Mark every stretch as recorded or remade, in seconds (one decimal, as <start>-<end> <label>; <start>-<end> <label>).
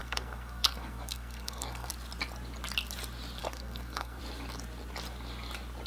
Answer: 0.0-1.9 remade; 1.9-3.4 recorded; 3.4-4.2 remade; 4.2-5.9 recorded